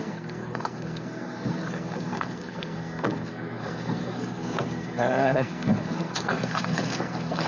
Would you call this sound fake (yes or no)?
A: yes